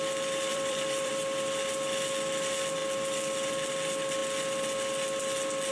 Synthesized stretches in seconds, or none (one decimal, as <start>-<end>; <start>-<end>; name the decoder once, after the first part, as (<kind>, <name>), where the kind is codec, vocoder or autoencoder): 0.5-1.1 (vocoder, BigVGAN v2)